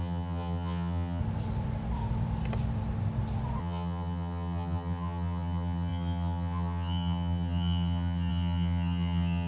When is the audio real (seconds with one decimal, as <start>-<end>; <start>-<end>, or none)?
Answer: 1.2-3.6